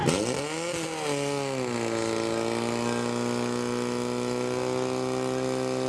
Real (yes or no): yes